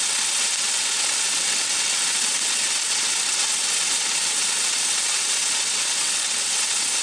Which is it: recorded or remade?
remade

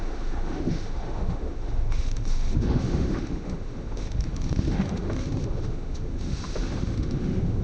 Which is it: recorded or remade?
remade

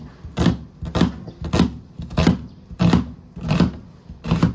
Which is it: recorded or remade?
recorded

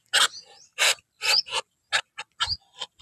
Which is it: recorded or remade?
recorded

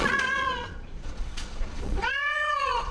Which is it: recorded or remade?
remade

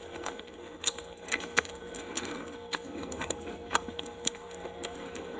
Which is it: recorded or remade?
remade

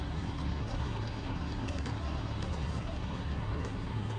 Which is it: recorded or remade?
remade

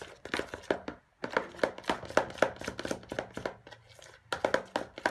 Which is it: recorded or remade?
recorded